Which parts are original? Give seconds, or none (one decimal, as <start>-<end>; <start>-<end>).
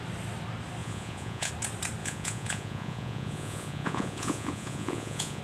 0.0-0.8; 1.5-2.0